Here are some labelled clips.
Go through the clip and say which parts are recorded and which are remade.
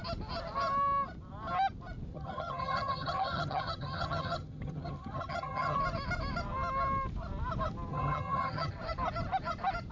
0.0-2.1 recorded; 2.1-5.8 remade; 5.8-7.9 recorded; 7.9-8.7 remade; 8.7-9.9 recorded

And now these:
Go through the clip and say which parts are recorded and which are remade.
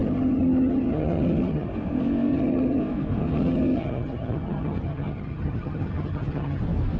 0.0-1.7 remade; 1.7-2.3 recorded; 2.3-2.8 remade; 2.8-3.2 recorded; 3.2-6.6 remade; 6.6-7.0 recorded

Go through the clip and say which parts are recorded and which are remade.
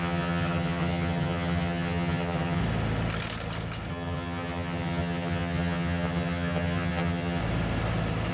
0.0-2.6 remade; 2.6-3.9 recorded; 3.9-7.4 remade; 7.4-8.3 recorded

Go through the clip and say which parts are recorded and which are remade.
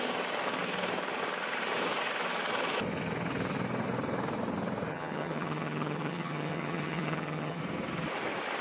0.0-4.9 recorded; 4.9-7.6 remade; 7.6-8.6 recorded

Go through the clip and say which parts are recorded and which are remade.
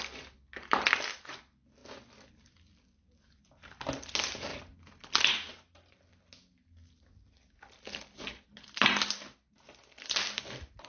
0.0-10.9 recorded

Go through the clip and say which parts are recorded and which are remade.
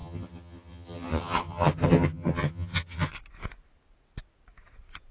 0.0-3.1 remade; 3.1-5.1 recorded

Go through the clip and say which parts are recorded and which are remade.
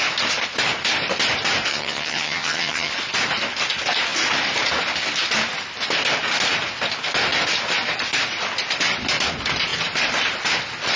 0.0-1.7 recorded; 1.7-2.9 remade; 2.9-11.0 recorded